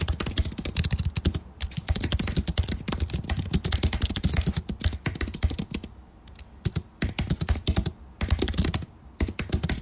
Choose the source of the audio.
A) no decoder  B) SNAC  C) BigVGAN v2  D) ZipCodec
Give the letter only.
A